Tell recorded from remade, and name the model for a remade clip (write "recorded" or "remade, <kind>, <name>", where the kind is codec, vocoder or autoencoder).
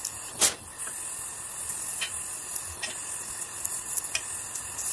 recorded